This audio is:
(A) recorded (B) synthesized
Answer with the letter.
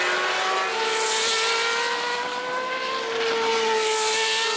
A